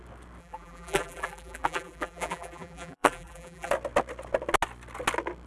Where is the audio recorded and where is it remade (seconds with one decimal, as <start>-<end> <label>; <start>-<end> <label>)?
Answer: 0.0-0.4 recorded; 0.4-3.7 remade; 3.7-5.5 recorded